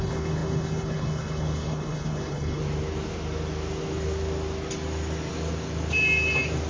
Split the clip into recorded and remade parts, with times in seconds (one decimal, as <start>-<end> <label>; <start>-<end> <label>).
0.0-2.6 remade; 2.6-6.7 recorded